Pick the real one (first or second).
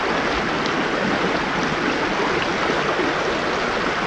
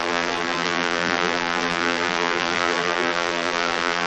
first